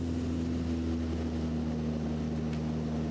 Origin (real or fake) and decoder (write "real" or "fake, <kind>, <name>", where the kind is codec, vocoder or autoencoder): real